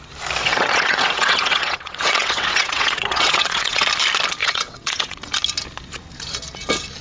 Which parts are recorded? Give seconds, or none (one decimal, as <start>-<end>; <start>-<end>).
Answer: 0.0-0.4; 3.8-4.4; 5.2-7.0